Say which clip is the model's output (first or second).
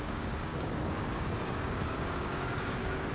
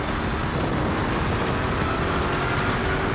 first